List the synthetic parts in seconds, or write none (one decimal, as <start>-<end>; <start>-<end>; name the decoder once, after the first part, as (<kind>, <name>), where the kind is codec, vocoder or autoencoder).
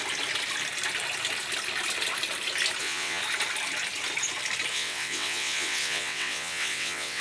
2.8-3.2 (vocoder, WaveNeXt); 4.7-7.2